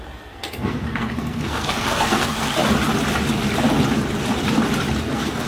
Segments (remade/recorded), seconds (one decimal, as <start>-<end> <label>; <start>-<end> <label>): 0.0-2.6 remade; 2.6-5.1 recorded; 5.1-5.5 remade